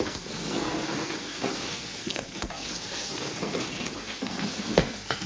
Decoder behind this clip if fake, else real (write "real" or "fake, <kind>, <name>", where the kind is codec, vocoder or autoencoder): fake, codec, SNAC